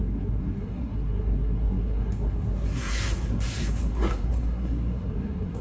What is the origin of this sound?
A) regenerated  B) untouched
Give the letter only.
A